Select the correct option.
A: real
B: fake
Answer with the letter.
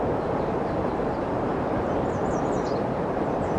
B